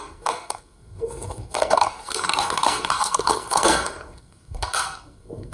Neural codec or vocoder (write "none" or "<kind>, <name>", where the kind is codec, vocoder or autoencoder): codec, SNAC